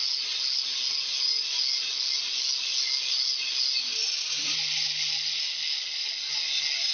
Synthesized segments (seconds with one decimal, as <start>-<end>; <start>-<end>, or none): none